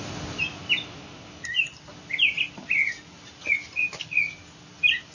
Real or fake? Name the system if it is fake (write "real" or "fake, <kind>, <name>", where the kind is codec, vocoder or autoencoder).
real